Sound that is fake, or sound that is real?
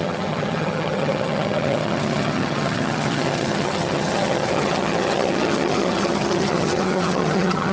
fake